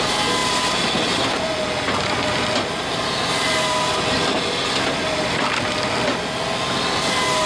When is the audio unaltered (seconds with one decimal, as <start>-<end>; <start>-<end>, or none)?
0.0-7.5